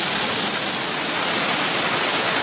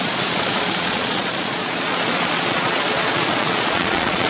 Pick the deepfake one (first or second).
second